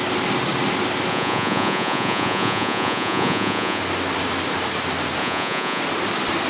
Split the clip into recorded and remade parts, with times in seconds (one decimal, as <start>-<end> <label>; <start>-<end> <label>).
0.0-1.1 recorded; 1.1-3.8 remade; 3.8-5.2 recorded; 5.2-5.8 remade; 5.8-6.5 recorded